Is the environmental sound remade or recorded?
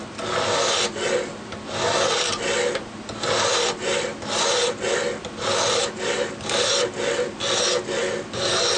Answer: recorded